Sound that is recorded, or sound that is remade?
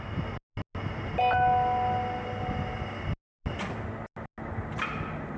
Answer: recorded